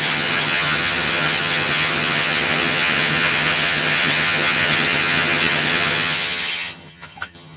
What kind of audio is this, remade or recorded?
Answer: remade